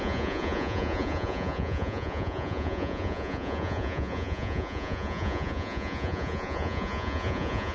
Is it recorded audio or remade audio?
remade